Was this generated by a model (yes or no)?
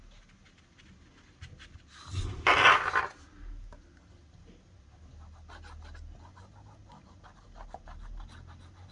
no